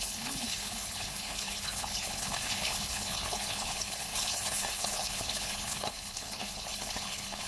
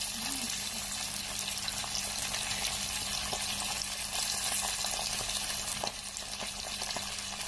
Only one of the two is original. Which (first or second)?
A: second